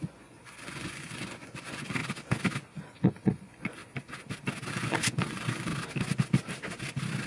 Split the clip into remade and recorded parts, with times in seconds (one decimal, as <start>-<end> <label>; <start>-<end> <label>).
0.0-2.0 remade; 2.0-2.8 recorded; 2.8-3.8 remade; 3.8-4.7 recorded; 4.7-5.7 remade; 5.7-7.3 recorded